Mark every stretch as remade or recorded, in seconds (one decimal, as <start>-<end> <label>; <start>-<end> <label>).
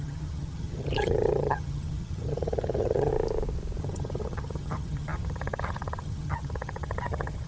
0.0-3.1 remade; 3.1-3.8 recorded; 3.8-7.5 remade